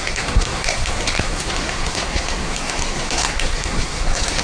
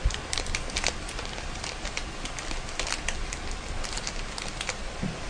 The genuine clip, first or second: second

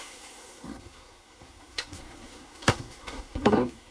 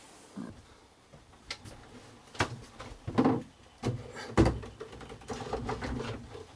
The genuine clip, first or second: second